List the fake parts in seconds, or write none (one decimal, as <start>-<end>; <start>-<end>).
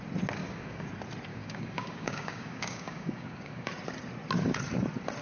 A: 0.4-0.9; 1.3-3.7